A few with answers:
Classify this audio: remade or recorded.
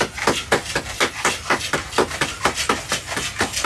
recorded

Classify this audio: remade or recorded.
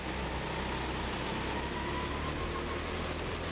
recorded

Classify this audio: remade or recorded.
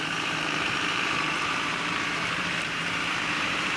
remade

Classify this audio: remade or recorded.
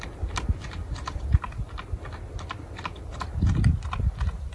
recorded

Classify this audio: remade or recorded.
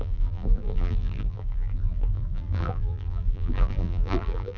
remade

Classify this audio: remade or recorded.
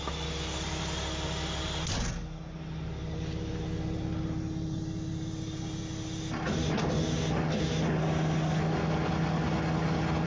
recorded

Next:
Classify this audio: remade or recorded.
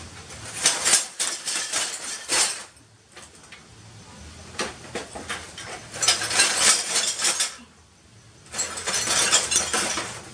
recorded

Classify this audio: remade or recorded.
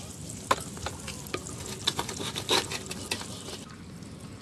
recorded